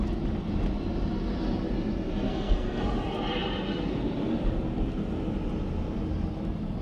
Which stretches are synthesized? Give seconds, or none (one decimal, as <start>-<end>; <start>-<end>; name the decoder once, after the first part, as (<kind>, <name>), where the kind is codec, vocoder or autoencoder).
2.3-2.8 (codec, SNAC)